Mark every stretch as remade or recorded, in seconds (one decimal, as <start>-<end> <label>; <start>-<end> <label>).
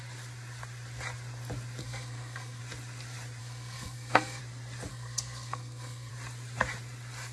0.0-1.8 recorded; 1.8-2.6 remade; 2.6-3.4 recorded; 3.4-4.4 remade; 4.4-4.9 recorded; 4.9-6.1 remade; 6.1-7.3 recorded